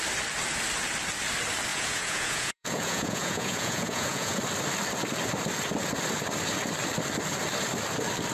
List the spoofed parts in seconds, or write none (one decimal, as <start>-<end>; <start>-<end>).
1.7-4.4